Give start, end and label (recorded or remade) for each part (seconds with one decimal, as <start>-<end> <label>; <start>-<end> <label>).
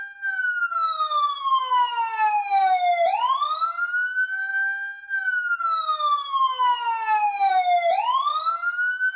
0.0-9.2 recorded